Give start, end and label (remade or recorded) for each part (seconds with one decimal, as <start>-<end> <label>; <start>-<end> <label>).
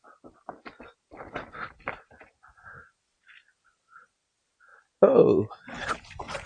0.0-6.5 recorded